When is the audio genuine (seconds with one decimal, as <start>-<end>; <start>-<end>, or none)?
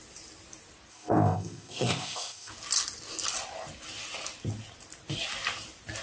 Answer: 0.0-0.9; 2.5-6.0